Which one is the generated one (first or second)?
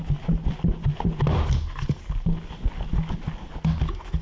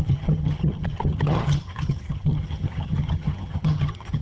second